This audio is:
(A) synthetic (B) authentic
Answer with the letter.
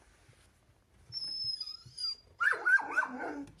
B